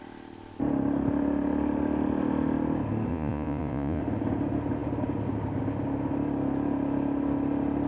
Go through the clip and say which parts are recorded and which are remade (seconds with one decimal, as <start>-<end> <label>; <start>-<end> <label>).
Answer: 0.0-3.1 recorded; 3.1-4.0 remade; 4.0-7.9 recorded